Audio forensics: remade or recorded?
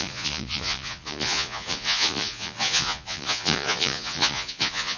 remade